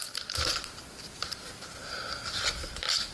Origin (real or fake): real